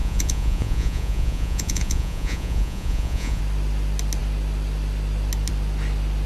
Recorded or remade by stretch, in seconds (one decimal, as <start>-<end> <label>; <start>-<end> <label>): 0.0-3.4 remade; 3.4-6.3 recorded